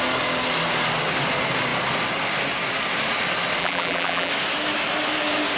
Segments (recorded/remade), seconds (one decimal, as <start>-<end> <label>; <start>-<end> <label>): 0.0-3.6 recorded; 3.6-4.3 remade; 4.3-5.6 recorded